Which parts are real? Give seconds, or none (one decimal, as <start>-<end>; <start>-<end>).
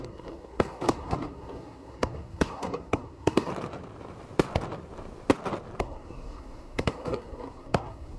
3.5-5.8